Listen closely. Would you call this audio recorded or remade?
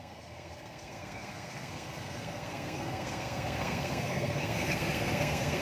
remade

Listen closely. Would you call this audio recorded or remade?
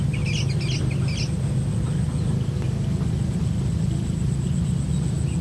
recorded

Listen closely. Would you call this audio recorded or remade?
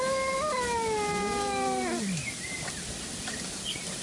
recorded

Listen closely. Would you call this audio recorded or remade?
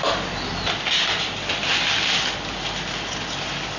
recorded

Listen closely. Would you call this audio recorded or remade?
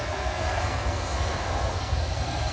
remade